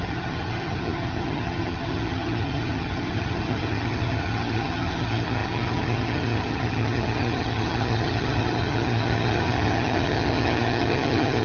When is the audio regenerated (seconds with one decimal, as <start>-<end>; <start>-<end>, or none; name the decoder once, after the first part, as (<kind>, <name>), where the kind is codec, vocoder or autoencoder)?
0.0-11.4 (vocoder, HiFi-GAN)